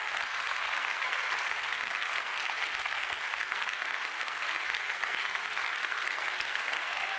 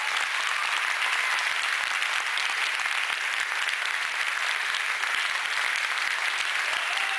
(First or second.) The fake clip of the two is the first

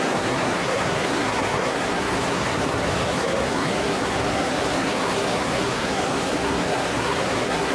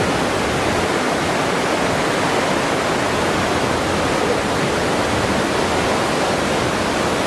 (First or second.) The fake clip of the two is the first